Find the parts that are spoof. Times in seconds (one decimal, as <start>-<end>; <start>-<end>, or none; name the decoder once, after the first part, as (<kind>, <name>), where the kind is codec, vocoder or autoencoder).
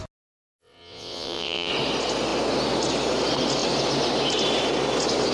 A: 0.6-1.7 (vocoder, WaveNeXt)